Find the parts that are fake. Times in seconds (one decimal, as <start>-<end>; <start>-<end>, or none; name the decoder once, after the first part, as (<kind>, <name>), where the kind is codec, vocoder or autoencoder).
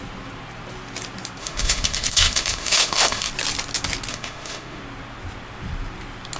1.4-3.3 (autoencoder, DAC-VAE); 4.1-4.8